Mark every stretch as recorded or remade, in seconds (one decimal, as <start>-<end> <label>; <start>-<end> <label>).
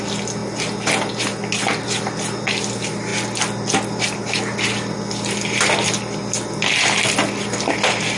0.0-8.2 recorded